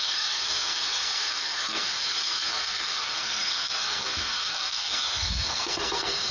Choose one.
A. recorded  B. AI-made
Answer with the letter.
B